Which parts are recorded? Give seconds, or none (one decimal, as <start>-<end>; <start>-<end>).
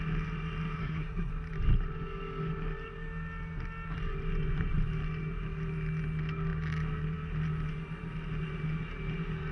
0.0-0.8; 1.3-9.5